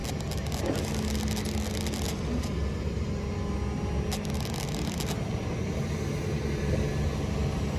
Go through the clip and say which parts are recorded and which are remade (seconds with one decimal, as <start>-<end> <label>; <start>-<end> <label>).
0.0-7.8 recorded